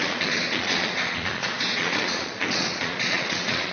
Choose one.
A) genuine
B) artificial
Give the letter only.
B